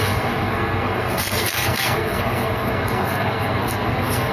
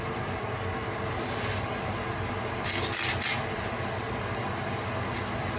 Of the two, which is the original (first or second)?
second